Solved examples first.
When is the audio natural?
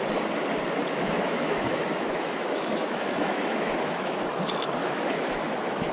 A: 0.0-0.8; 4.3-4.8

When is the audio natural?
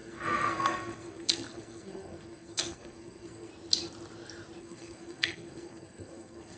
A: 3.5-4.6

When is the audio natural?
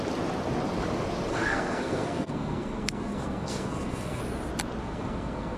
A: 0.0-1.3; 4.2-4.8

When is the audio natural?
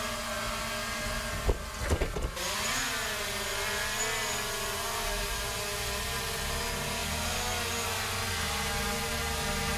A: 0.0-9.8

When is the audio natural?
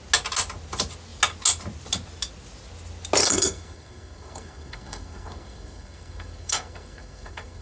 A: 0.0-3.2